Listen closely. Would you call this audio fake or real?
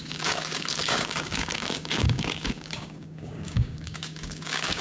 fake